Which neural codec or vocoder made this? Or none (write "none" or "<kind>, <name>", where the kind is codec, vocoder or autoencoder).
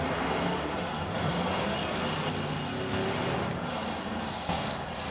none